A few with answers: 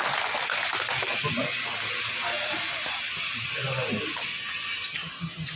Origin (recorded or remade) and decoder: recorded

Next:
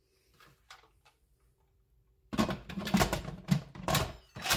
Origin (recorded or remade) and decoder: remade, vocoder, BigVGAN v2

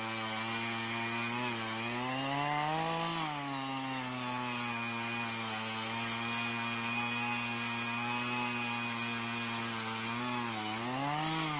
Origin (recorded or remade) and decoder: recorded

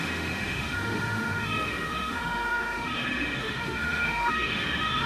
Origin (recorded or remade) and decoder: remade, autoencoder, DAC-VAE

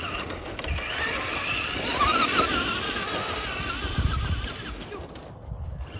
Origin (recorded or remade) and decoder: remade, vocoder, BigVGAN v2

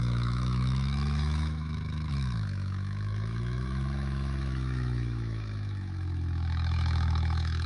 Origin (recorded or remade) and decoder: remade, autoencoder, DAC-VAE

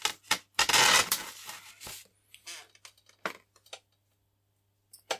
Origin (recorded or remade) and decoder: recorded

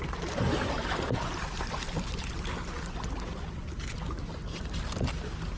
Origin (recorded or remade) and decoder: recorded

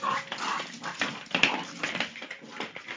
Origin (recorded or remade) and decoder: recorded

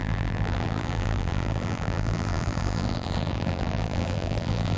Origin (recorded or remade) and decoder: remade, vocoder, BigVGAN v2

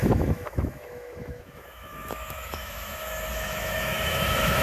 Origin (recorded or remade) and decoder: remade, autoencoder, DAC-VAE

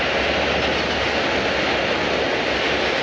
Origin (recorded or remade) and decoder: recorded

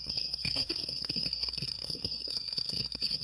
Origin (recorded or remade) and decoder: remade, codec, SNAC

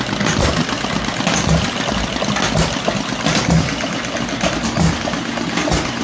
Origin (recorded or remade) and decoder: recorded